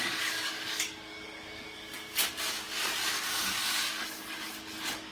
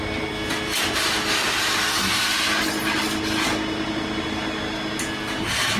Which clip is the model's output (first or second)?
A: first